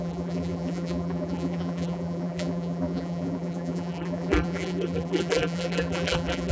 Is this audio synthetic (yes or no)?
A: yes